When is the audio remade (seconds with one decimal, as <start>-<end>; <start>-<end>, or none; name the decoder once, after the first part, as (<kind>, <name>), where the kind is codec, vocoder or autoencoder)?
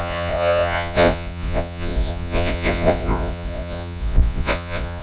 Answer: 0.0-5.0 (vocoder, Vocos)